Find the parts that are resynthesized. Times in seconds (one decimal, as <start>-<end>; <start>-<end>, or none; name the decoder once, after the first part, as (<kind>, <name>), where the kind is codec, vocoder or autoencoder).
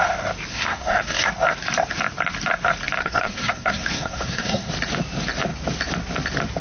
0.5-1.3 (codec, SNAC); 3.0-4.7